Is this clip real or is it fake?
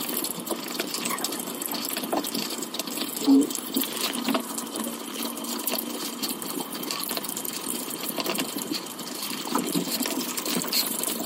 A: fake